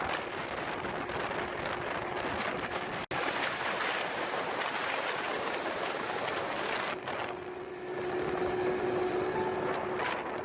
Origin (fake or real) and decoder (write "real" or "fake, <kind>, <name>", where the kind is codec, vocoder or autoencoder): real